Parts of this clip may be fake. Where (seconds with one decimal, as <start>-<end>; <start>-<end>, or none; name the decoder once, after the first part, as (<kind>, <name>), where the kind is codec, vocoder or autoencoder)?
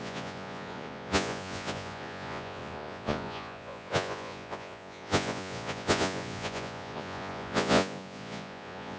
0.0-9.0 (vocoder, Vocos)